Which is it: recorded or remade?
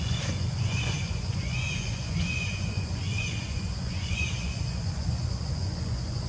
remade